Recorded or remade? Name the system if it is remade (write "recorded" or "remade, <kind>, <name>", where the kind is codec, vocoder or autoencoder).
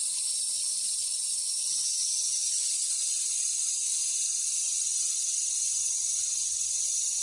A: remade, vocoder, Vocos